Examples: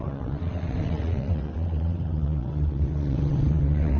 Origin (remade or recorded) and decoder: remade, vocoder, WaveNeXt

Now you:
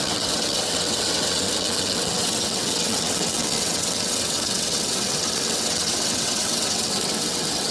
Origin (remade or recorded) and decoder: remade, vocoder, WaveNeXt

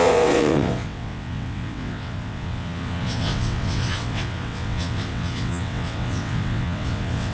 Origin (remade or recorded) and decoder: remade, vocoder, WaveNeXt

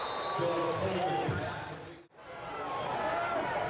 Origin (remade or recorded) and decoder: recorded